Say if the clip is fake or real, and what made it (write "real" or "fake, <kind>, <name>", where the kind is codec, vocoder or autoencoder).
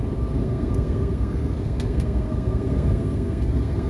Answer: fake, codec, SNAC